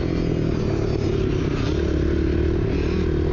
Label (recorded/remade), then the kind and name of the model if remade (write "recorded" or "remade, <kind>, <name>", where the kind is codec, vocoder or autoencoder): recorded